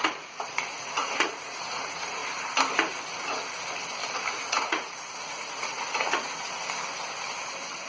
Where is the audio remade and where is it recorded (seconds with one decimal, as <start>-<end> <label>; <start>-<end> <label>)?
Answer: 0.0-2.2 remade; 2.2-4.3 recorded; 4.3-6.4 remade; 6.4-7.9 recorded